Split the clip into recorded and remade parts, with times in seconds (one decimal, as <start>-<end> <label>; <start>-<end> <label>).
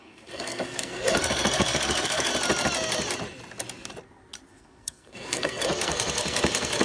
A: 0.0-2.3 remade; 2.3-4.5 recorded; 4.5-6.8 remade